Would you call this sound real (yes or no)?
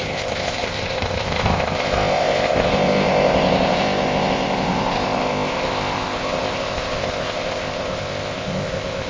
no